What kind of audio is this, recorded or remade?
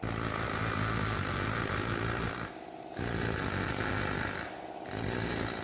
recorded